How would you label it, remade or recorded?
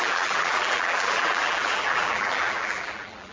remade